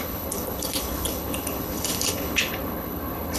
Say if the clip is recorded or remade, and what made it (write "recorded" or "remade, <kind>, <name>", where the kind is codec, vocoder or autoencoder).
remade, codec, HILCodec